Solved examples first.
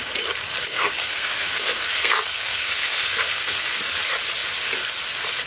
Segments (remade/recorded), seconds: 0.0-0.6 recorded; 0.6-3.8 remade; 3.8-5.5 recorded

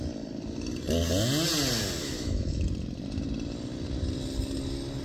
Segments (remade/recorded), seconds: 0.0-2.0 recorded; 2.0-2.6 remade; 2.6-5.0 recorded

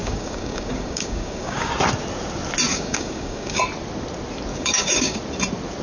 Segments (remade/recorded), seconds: 0.0-1.7 remade; 1.7-2.7 recorded; 2.7-3.6 remade; 3.6-4.5 recorded; 4.5-5.2 remade; 5.2-5.8 recorded

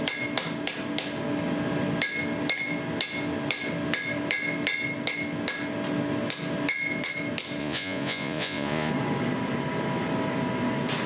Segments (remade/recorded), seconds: 0.0-7.6 recorded; 7.6-8.9 remade; 8.9-11.1 recorded